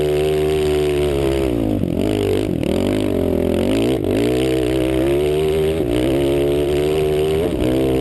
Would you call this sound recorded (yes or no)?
yes